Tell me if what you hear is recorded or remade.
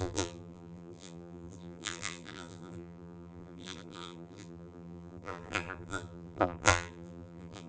remade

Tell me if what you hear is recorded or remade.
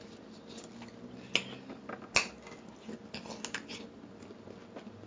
recorded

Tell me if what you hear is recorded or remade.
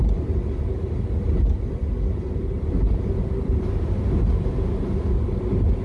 recorded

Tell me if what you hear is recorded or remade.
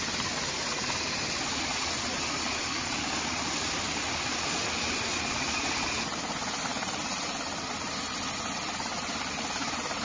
recorded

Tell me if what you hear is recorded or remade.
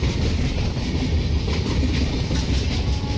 recorded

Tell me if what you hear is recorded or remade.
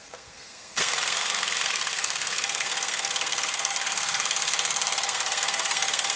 remade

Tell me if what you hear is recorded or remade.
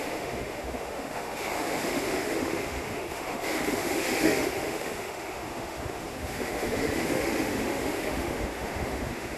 remade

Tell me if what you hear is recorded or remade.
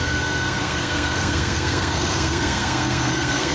remade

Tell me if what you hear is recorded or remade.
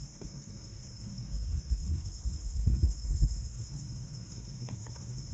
remade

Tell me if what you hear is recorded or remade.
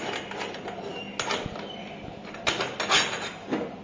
recorded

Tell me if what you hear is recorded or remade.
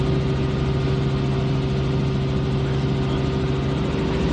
recorded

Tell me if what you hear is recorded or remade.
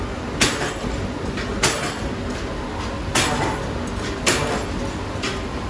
recorded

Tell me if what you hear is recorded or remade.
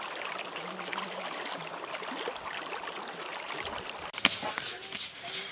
recorded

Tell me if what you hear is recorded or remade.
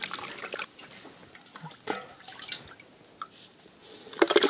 recorded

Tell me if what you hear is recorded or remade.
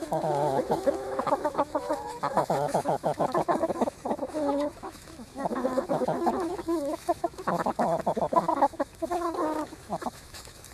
remade